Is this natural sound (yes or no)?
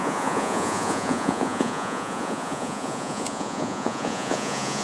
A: no